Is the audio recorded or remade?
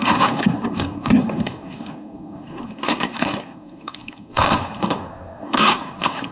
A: remade